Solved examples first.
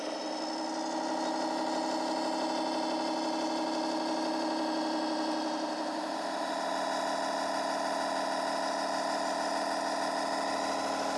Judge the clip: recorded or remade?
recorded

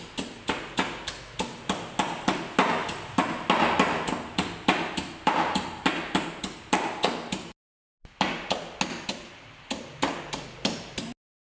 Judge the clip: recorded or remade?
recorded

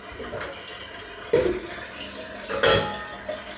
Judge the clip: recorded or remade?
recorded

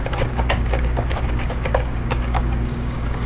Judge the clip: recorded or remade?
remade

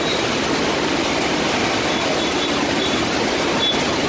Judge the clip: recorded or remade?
recorded